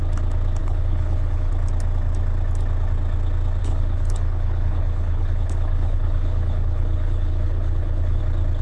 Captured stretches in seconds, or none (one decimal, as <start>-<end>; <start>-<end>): 0.0-0.6; 1.5-3.6; 8.2-8.6